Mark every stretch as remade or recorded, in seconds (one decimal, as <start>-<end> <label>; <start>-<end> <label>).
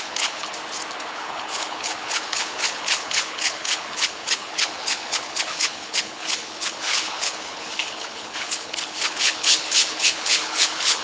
0.0-0.5 remade; 0.5-1.1 recorded; 1.1-11.0 remade